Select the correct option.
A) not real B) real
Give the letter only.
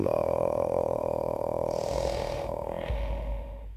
A